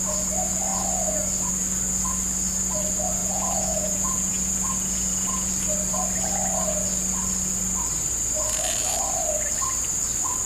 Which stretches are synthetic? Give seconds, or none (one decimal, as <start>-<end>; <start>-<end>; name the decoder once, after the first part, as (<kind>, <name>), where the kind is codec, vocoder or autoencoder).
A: 3.2-5.5 (vocoder, Vocos)